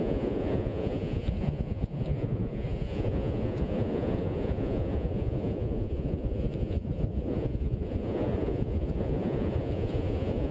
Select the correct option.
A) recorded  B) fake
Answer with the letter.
B